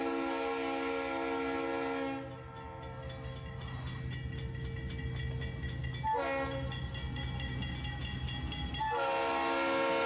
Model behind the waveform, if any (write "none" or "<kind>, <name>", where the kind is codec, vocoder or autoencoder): none